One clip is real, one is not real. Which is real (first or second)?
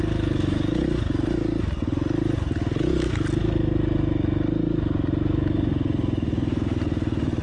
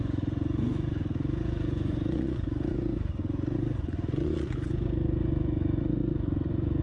first